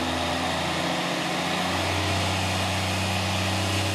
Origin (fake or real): real